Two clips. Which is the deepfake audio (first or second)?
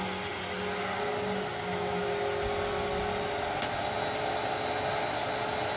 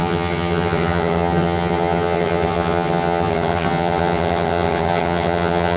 second